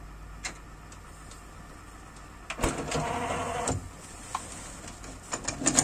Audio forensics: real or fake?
real